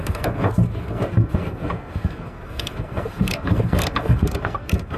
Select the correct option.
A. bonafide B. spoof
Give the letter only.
B